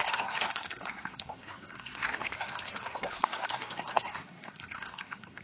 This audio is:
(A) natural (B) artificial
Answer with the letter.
B